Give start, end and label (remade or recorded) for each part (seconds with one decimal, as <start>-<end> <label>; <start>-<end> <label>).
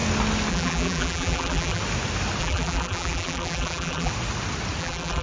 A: 0.0-0.5 recorded; 0.5-1.8 remade; 1.8-2.4 recorded; 2.4-4.1 remade; 4.1-4.8 recorded; 4.8-5.2 remade